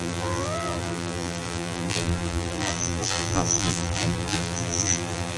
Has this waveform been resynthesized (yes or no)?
yes